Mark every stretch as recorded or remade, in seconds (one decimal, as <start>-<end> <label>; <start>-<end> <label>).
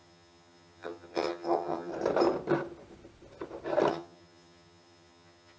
0.0-1.9 remade; 1.9-3.9 recorded; 3.9-5.6 remade